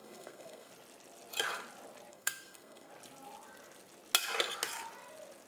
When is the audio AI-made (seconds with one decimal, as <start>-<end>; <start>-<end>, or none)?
0.0-0.7; 2.1-2.9